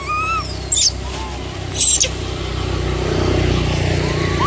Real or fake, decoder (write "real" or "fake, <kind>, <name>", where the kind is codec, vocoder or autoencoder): real